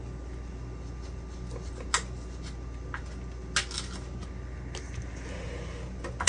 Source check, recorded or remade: recorded